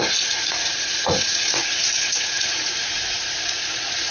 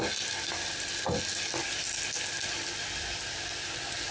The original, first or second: second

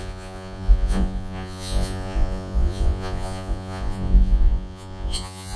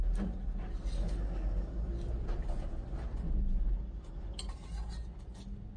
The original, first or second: second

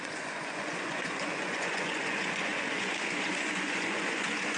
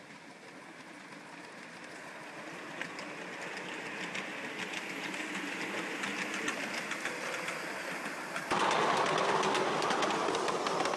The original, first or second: second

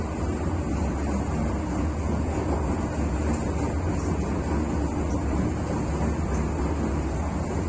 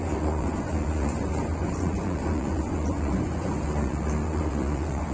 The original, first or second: first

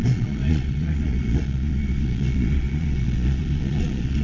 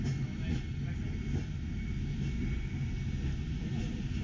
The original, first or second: second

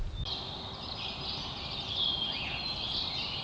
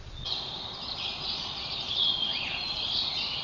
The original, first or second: first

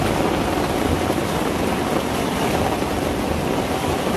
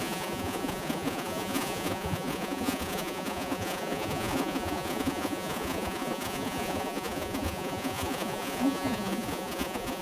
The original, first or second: first